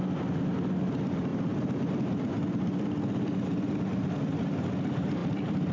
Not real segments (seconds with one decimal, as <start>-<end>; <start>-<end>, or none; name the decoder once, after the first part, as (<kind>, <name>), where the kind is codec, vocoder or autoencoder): 1.3-4.7 (vocoder, BigVGAN v2); 5.2-5.7